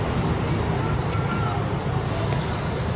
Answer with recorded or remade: recorded